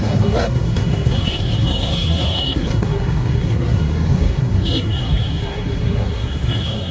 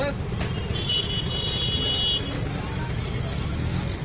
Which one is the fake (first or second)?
first